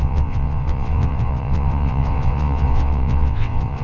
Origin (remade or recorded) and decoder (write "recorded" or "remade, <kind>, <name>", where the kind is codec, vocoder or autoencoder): remade, vocoder, WaveNeXt